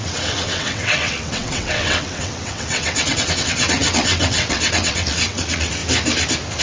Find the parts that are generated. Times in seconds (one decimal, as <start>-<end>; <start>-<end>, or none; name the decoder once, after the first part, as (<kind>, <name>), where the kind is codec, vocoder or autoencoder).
0.0-5.8 (vocoder, WaveNeXt)

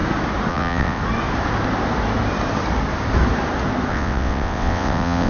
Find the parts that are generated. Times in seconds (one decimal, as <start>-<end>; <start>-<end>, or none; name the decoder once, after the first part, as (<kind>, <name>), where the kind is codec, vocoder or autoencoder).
0.5-1.0 (vocoder, WaveNeXt); 3.9-5.3

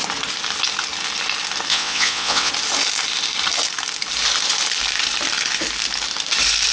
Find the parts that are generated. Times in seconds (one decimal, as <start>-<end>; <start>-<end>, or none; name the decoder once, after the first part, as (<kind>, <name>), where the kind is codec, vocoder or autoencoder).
1.7-2.5 (vocoder, WaveNeXt)